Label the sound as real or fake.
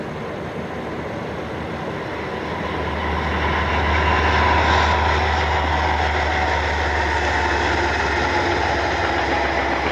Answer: real